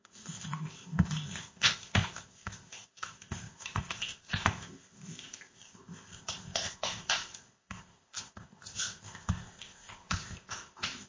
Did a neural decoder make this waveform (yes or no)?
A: yes